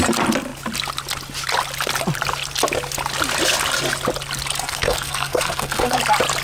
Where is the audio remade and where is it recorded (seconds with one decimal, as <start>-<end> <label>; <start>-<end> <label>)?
0.0-4.6 recorded; 4.6-6.0 remade; 6.0-6.4 recorded